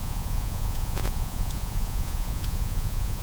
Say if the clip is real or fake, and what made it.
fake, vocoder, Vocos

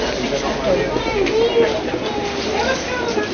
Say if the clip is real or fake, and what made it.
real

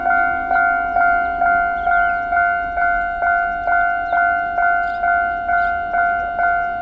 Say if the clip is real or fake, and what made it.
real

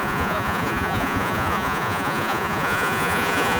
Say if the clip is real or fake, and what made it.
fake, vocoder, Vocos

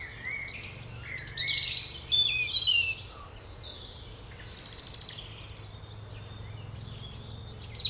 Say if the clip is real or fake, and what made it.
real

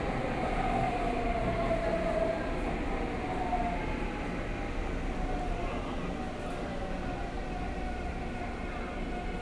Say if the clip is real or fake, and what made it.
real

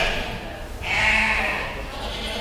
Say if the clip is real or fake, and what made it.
real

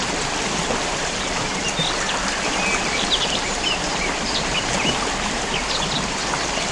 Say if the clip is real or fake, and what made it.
real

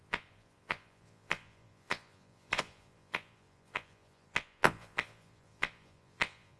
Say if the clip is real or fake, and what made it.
fake, vocoder, Vocos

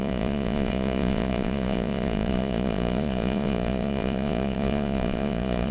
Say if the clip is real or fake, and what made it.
fake, vocoder, Vocos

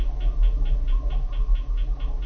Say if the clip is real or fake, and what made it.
real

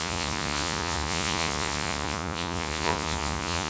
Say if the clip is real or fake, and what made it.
fake, vocoder, Vocos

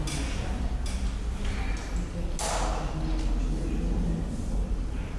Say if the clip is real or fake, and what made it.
real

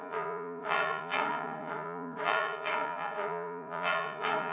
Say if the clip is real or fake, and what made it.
fake, vocoder, Vocos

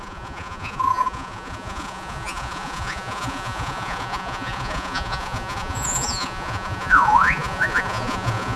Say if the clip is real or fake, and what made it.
fake, vocoder, Vocos